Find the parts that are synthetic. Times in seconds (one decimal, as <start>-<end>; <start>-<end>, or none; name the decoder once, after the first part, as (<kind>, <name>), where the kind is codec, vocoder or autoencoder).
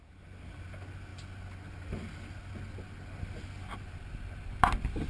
none